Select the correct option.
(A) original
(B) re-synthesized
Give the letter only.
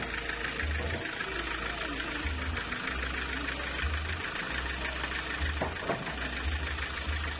A